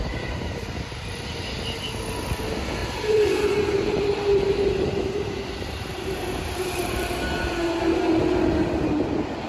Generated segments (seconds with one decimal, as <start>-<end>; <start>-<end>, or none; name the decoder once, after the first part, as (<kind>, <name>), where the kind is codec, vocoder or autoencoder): 2.8-7.2 (vocoder, BigVGAN v2)